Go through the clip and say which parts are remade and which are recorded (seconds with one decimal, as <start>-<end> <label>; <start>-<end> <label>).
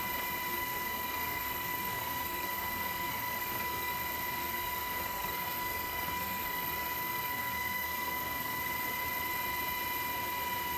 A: 0.0-0.5 recorded; 0.5-3.9 remade; 3.9-4.4 recorded; 4.4-8.6 remade; 8.6-10.8 recorded